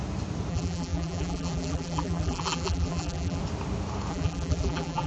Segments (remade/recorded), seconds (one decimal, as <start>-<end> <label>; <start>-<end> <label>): 0.0-0.5 recorded; 0.5-3.4 remade; 3.4-4.1 recorded; 4.1-5.1 remade